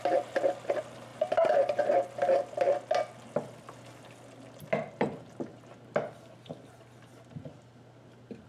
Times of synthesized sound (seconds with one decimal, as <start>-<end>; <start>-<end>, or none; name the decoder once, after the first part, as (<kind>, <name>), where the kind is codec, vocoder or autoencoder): 1.1-1.8 (vocoder, BigVGAN v2)